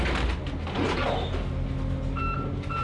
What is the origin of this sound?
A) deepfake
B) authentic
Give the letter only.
B